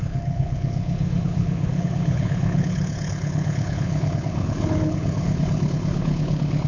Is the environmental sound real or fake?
fake